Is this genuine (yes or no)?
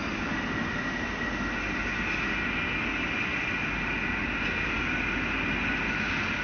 yes